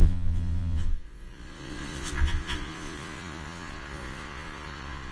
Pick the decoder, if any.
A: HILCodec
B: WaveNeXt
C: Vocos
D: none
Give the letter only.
C